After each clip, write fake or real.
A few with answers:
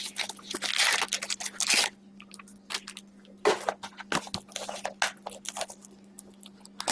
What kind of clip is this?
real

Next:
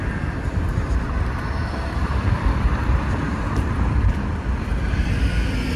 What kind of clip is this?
fake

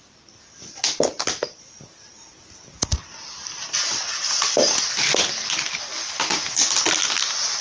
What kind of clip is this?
real